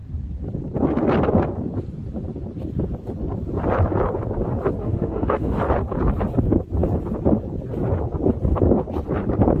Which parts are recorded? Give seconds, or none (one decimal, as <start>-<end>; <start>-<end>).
0.0-4.8; 5.6-9.6